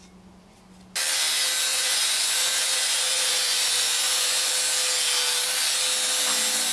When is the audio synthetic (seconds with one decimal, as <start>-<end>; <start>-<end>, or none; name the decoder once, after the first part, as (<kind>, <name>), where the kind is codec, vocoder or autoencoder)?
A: 1.7-4.5 (vocoder, Vocos)